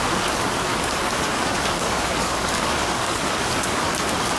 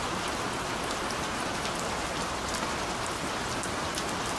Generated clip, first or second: first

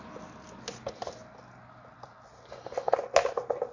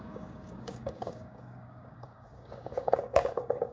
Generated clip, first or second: second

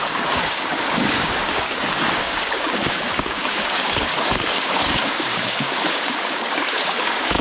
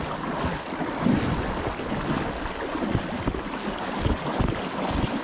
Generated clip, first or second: first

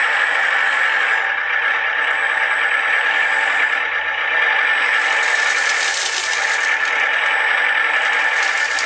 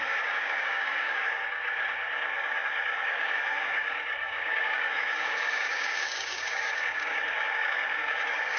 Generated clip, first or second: second